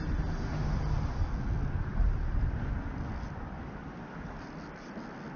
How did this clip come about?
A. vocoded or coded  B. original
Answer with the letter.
B